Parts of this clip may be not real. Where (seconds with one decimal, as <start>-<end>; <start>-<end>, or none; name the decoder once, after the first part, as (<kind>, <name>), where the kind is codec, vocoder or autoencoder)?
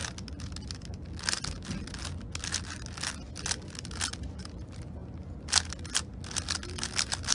none